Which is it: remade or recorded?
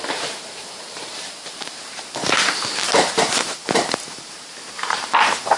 remade